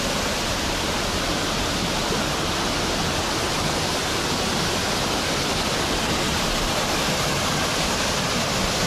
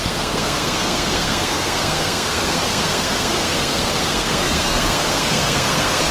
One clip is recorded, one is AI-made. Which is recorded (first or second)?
first